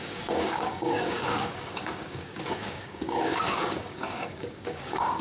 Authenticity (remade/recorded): remade